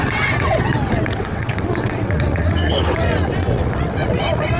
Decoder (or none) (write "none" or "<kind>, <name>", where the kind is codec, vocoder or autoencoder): vocoder, WaveNeXt